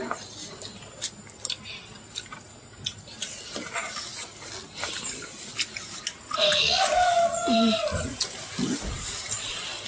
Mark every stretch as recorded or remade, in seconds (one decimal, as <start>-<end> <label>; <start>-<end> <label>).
0.0-9.9 recorded